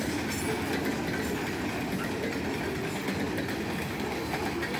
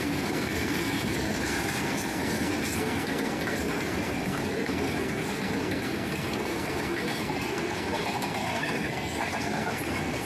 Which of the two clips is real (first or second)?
first